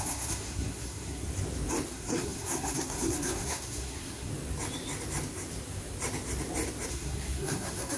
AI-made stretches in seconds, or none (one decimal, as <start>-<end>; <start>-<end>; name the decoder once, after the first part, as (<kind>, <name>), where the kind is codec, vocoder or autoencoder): 0.0-1.3 (codec, SNAC); 1.9-4.3; 6.9-8.0